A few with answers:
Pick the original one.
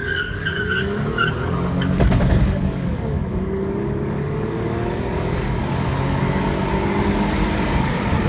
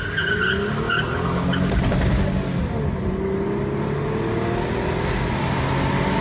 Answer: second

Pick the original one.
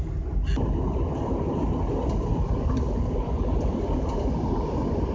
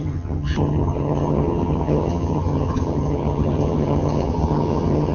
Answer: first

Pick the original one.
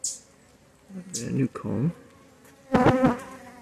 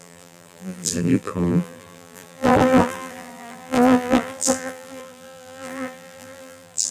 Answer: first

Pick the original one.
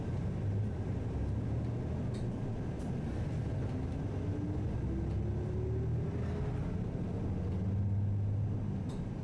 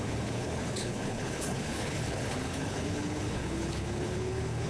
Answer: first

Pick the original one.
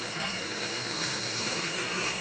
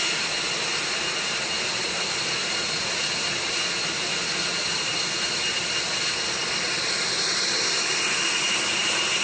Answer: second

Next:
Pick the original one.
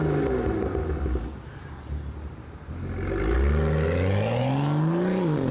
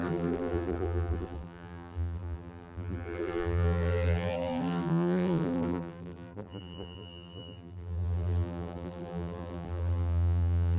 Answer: first